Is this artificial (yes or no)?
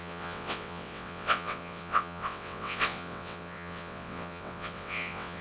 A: yes